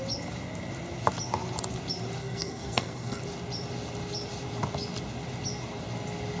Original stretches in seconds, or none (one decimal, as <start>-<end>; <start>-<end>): 0.0-2.2; 3.2-6.4